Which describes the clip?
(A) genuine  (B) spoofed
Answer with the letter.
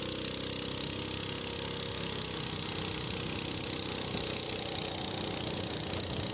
A